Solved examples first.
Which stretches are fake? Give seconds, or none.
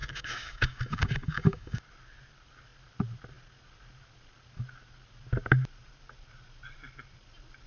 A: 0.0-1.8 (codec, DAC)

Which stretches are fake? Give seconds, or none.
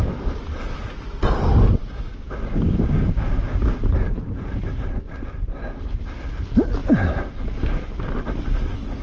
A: 1.8-3.8 (codec, DAC)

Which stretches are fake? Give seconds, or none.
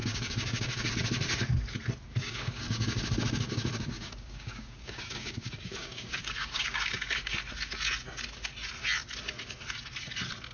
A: 0.0-0.9 (codec, DAC); 2.1-7.3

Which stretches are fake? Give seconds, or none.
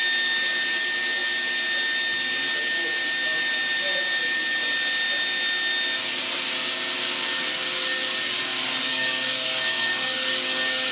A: 8.9-10.9 (codec, DAC)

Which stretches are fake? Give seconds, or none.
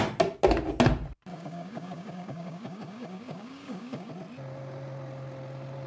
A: 1.3-4.1 (codec, DAC)